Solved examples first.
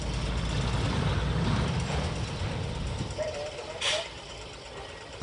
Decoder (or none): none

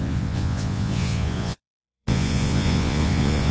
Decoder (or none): vocoder, Vocos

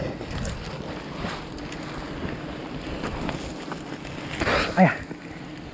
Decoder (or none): none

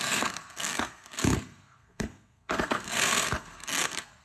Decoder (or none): codec, SNAC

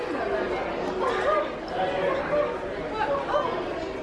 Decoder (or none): none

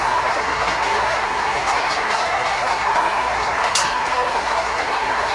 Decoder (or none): codec, SNAC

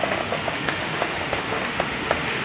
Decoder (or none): autoencoder, DAC-VAE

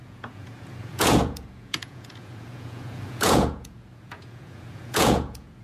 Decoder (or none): vocoder, Vocos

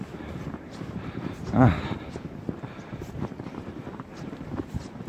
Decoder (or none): vocoder, BigVGAN v2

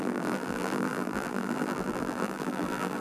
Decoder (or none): vocoder, BigVGAN v2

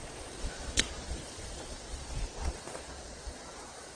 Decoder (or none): vocoder, Vocos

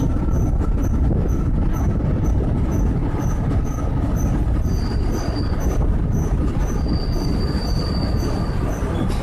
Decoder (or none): none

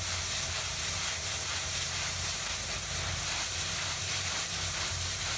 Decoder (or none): vocoder, BigVGAN v2